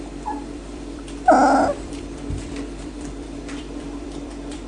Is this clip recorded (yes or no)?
no